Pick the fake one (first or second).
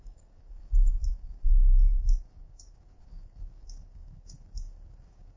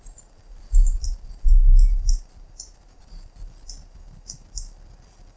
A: first